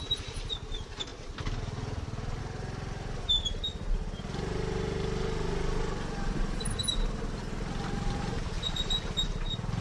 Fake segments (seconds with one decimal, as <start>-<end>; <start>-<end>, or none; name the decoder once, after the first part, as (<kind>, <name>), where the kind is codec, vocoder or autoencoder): none